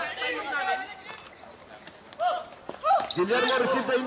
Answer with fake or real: real